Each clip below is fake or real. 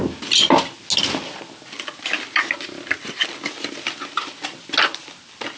real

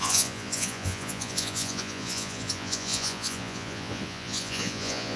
fake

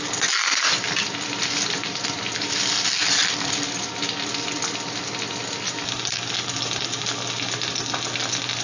real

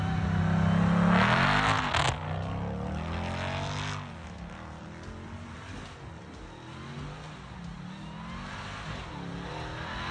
real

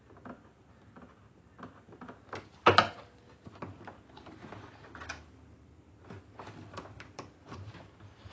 real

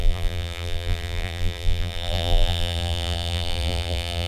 fake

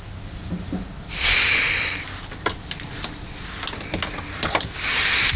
real